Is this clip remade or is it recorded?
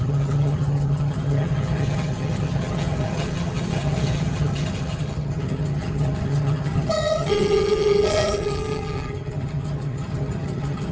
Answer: remade